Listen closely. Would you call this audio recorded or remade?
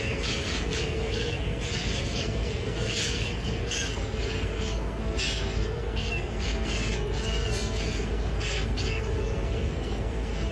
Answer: remade